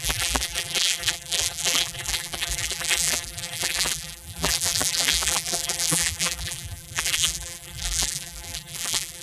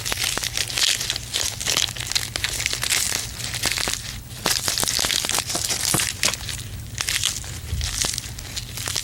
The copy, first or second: first